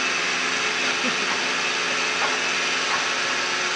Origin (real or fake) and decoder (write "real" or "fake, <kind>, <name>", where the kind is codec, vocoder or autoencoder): real